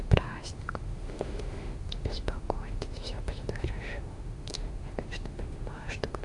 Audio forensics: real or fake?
fake